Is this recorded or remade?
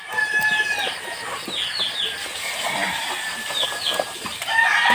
recorded